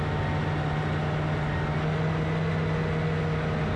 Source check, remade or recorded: recorded